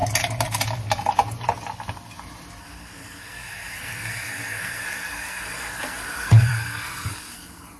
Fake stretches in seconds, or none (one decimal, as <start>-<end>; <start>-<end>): 2.6-7.8